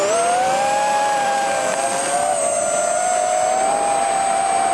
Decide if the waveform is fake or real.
real